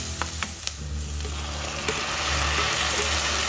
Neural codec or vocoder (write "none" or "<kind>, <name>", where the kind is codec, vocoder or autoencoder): none